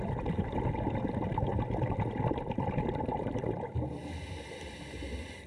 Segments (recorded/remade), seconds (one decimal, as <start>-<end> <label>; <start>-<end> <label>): 0.0-5.5 recorded